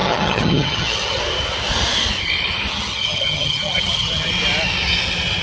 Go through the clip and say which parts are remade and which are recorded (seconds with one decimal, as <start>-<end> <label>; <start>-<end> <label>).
0.0-1.2 remade; 1.2-2.7 recorded; 2.7-4.3 remade; 4.3-5.4 recorded